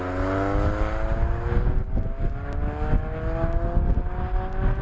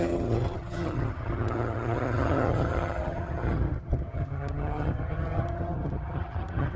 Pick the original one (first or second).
first